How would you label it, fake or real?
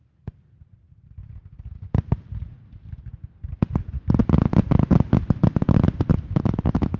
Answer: real